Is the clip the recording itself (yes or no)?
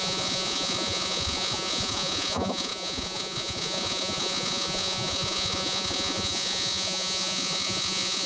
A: no